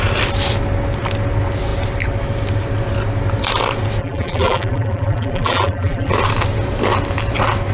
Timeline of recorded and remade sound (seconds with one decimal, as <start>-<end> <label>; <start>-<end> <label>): 0.0-4.0 recorded; 4.0-6.1 remade; 6.1-7.7 recorded